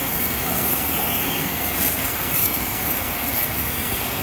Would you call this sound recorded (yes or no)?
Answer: no